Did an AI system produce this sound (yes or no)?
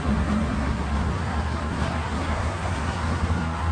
yes